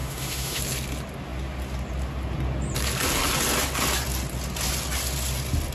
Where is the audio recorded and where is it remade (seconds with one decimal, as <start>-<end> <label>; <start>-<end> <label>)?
0.0-0.6 remade; 0.6-5.7 recorded